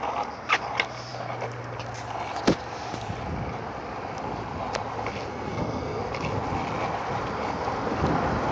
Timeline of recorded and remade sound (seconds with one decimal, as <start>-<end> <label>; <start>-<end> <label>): 0.0-5.3 recorded; 5.3-6.0 remade; 6.0-8.5 recorded

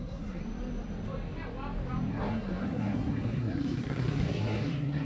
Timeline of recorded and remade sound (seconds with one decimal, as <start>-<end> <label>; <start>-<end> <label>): 0.0-0.4 remade; 0.4-2.1 recorded; 2.1-5.0 remade

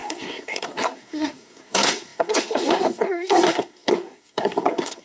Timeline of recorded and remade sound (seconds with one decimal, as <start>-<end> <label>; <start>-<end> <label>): 0.0-5.0 remade

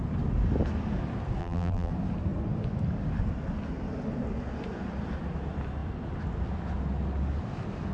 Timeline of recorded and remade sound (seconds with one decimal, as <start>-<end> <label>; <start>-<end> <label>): 0.0-1.4 recorded; 1.4-1.9 remade; 1.9-7.9 recorded

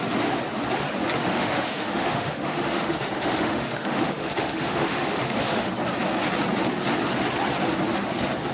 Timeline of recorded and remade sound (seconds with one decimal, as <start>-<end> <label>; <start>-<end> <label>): 0.0-1.2 recorded; 1.2-5.7 remade; 5.7-8.5 recorded

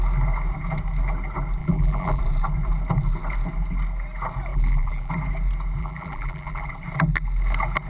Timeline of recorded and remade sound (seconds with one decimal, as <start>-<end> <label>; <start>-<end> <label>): 0.0-1.6 recorded; 1.6-2.2 remade; 2.2-4.5 recorded; 4.5-5.1 remade; 5.1-5.8 recorded; 5.8-6.7 remade; 6.7-7.9 recorded

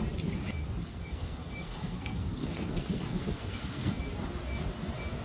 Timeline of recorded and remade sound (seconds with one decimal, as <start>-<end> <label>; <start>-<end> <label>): 0.0-0.9 recorded; 0.9-4.0 remade; 4.0-5.2 recorded

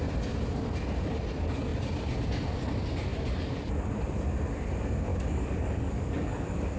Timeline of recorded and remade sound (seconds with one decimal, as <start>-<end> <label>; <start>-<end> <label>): 0.0-3.1 recorded; 3.1-3.7 remade; 3.7-5.1 recorded; 5.1-6.8 remade